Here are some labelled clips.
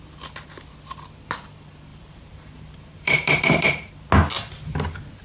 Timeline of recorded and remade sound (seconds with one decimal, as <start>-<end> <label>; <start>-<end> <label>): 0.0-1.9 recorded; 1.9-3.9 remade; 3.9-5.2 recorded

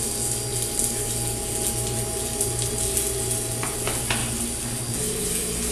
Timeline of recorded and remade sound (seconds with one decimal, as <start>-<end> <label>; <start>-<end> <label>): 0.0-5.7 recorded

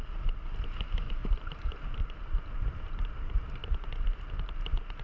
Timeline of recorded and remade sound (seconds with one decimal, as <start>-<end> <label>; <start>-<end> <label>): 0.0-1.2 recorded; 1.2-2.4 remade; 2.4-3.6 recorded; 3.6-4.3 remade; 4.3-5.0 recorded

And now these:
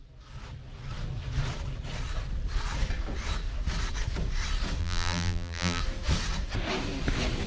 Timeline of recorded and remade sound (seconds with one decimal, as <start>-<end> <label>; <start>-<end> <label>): 0.0-4.8 recorded; 4.8-5.8 remade; 5.8-7.5 recorded

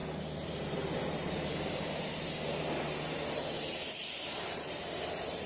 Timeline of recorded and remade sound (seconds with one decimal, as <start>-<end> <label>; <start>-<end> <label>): 0.0-4.0 remade; 4.0-4.7 recorded; 4.7-5.5 remade

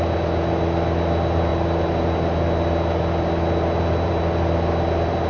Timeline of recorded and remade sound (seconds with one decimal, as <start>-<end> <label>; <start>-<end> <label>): 0.0-5.3 recorded

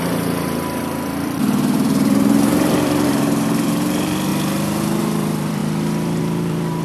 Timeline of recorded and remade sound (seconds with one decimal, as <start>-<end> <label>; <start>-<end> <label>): 0.0-4.3 remade; 4.3-5.0 recorded; 5.0-5.6 remade; 5.6-6.2 recorded; 6.2-6.8 remade